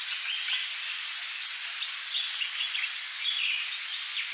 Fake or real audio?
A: real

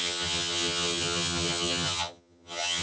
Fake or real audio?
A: fake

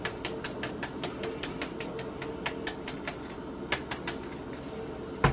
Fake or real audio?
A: real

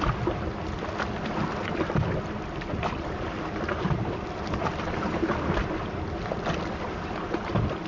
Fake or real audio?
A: real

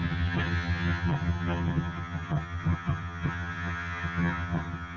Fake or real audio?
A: fake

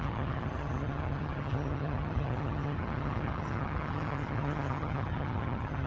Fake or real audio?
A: fake